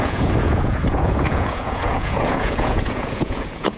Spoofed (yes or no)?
yes